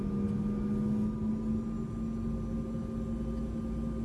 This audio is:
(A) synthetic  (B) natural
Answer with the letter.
B